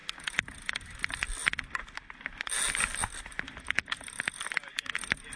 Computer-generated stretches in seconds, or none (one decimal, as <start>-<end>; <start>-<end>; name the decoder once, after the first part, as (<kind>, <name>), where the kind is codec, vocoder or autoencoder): none